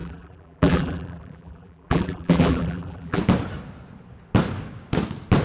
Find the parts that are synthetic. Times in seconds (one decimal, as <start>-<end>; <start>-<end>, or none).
0.0-3.2